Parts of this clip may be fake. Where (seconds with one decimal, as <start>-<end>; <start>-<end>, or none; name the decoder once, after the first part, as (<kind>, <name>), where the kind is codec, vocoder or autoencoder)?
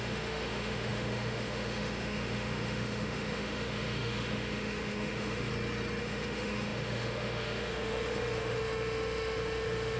0.0-5.5 (autoencoder, DAC-VAE); 6.0-10.0